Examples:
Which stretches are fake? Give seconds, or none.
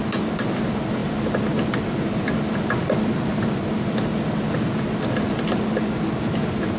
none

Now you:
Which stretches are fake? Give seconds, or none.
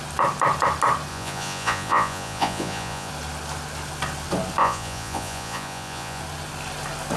1.1-3.1 (vocoder, Vocos); 4.6-6.2